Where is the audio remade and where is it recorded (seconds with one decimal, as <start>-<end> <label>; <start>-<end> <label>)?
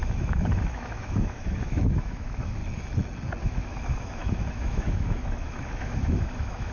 0.0-2.6 remade; 2.6-3.4 recorded; 3.4-6.7 remade